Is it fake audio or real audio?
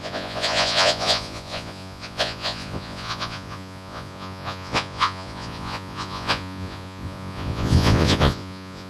fake